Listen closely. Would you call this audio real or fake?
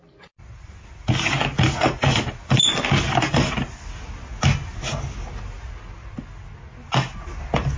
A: real